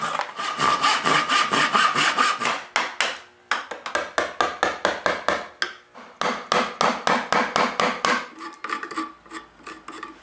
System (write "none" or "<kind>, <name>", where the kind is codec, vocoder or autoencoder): none